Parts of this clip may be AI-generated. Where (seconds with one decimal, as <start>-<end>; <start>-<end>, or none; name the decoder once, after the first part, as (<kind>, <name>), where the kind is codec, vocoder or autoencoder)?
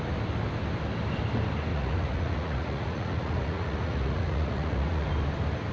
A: 1.7-5.1 (vocoder, Vocos)